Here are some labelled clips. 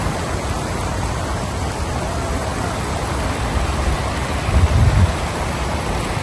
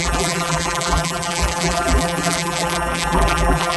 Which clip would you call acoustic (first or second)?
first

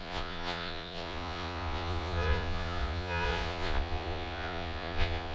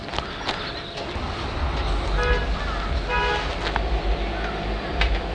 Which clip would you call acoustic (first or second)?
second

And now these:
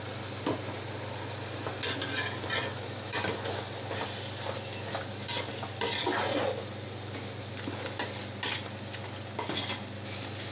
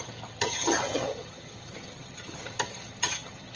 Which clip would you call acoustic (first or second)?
first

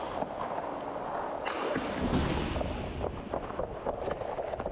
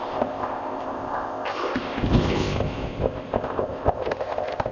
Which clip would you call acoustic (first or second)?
first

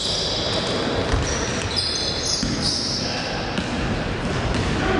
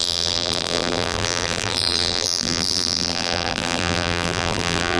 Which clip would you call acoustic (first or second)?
first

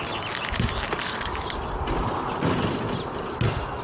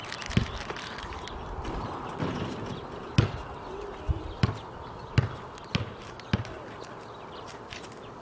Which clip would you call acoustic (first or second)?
first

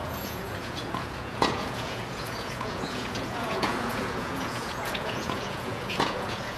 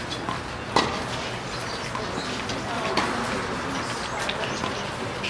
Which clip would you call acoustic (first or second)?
second